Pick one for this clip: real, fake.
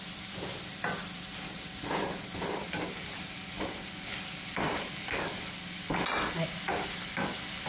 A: real